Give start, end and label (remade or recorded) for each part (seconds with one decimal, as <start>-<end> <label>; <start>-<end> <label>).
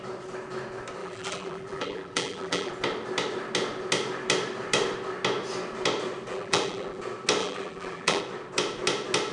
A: 0.0-1.0 recorded; 1.0-2.7 remade; 2.7-6.3 recorded; 6.3-7.0 remade; 7.0-7.4 recorded; 7.4-8.2 remade; 8.2-9.3 recorded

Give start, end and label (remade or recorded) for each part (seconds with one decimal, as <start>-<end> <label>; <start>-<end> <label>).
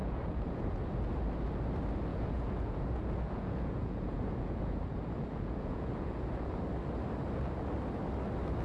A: 0.0-0.8 remade; 0.8-2.1 recorded; 2.1-6.6 remade; 6.6-8.6 recorded